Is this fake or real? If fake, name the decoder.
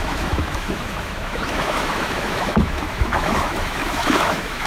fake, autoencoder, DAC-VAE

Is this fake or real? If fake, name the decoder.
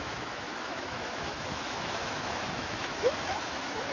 fake, autoencoder, DAC-VAE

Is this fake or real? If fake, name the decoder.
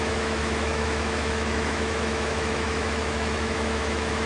fake, autoencoder, DAC-VAE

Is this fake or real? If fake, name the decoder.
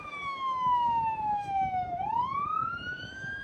fake, autoencoder, DAC-VAE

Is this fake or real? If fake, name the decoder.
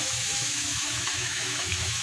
fake, autoencoder, DAC-VAE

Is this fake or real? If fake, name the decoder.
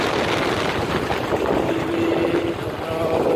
real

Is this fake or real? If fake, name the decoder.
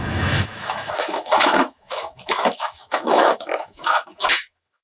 fake, autoencoder, DAC-VAE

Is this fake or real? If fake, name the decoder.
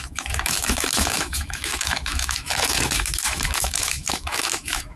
fake, autoencoder, DAC-VAE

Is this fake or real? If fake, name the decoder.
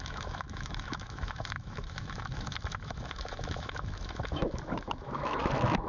fake, autoencoder, DAC-VAE